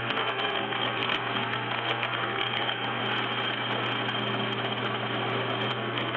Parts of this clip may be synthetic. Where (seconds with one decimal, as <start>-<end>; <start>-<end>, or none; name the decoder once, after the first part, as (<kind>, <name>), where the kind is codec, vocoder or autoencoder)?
0.0-3.0 (codec, SNAC); 5.7-6.2